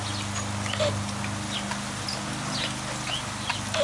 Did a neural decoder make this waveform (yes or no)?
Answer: no